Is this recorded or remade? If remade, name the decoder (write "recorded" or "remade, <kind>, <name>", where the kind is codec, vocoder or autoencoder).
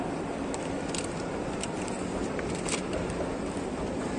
remade, vocoder, BigVGAN v2